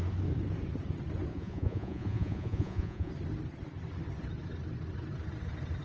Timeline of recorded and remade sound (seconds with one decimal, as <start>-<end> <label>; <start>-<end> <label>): 0.0-1.3 recorded; 1.3-3.1 remade; 3.1-5.8 recorded